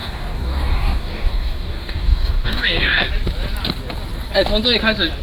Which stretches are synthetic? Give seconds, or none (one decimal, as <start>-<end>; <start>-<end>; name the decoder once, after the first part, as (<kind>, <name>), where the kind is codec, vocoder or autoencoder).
0.0-3.1 (codec, DAC)